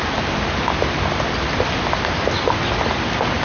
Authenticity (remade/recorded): recorded